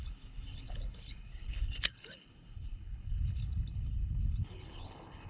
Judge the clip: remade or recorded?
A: remade